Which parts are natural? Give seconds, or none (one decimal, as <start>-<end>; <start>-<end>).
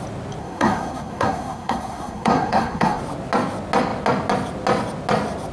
0.0-0.4; 3.0-5.5